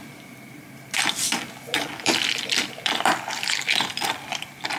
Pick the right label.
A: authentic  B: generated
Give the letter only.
B